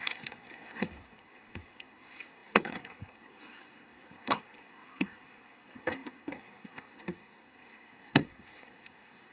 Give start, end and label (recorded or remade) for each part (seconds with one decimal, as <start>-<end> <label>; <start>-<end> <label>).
0.0-9.3 remade

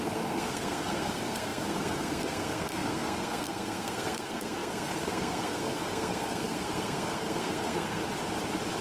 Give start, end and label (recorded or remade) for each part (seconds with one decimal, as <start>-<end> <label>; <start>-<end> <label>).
0.0-8.0 remade; 8.0-8.8 recorded

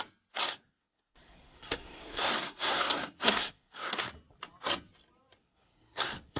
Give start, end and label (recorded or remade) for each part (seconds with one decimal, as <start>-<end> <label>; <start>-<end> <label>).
0.0-0.4 recorded; 0.4-4.1 remade; 4.1-5.4 recorded; 5.4-6.4 remade

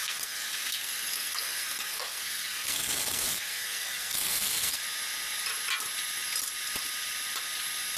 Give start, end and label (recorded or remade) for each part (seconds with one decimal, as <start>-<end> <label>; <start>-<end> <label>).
0.0-4.8 remade; 4.8-8.0 recorded